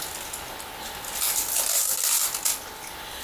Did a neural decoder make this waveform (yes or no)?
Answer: no